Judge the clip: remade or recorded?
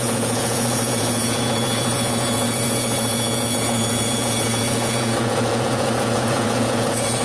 remade